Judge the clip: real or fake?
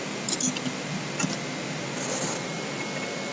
real